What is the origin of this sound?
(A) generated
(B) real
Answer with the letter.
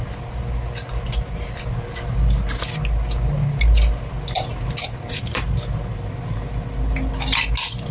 B